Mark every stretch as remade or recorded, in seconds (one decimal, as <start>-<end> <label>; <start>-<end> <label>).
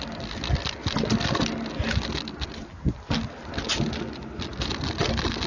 0.0-5.5 recorded